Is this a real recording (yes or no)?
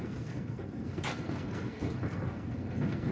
no